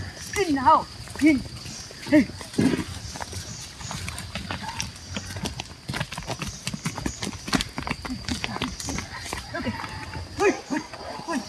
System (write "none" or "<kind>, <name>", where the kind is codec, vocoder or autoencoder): none